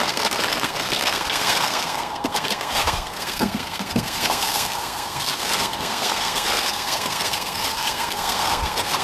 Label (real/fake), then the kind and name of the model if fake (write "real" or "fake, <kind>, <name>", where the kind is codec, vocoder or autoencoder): fake, codec, SNAC